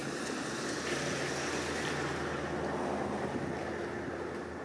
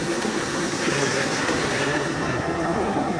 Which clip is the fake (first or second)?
second